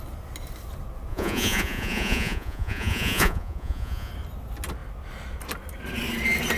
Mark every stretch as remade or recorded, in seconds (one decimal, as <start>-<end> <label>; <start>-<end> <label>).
0.0-1.1 recorded; 1.1-4.1 remade; 4.1-6.6 recorded